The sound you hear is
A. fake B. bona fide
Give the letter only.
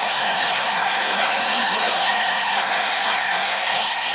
A